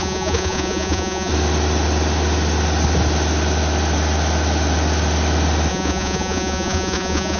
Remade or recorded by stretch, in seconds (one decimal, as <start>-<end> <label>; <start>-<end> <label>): 0.0-1.3 remade; 1.3-5.7 recorded; 5.7-7.4 remade